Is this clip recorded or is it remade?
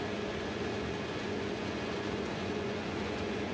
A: remade